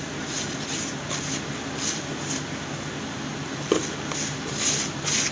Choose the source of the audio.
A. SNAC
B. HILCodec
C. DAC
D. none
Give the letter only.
D